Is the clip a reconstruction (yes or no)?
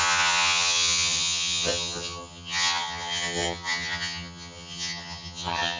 yes